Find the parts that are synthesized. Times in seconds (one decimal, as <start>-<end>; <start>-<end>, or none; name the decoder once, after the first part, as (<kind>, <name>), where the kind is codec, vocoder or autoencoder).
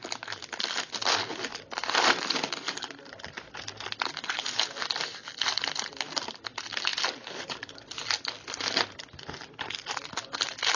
none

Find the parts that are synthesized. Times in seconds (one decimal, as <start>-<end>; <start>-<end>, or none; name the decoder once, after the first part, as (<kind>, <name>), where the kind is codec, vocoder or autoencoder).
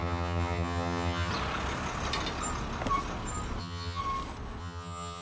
0.0-1.3 (vocoder, HiFi-GAN); 3.6-4.0; 4.6-5.2